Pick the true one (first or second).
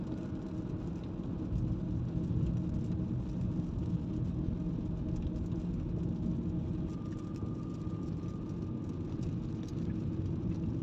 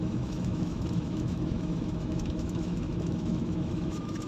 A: first